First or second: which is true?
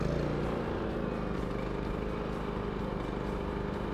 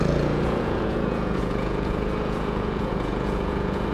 first